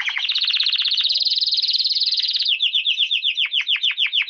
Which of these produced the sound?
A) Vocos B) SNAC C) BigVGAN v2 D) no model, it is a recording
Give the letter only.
A